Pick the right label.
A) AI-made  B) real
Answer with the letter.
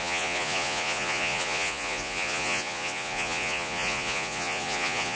A